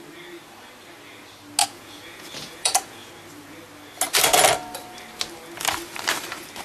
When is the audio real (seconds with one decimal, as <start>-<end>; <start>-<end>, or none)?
0.0-1.6; 3.1-6.6